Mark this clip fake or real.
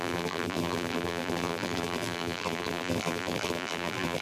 fake